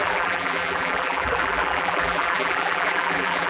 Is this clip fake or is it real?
fake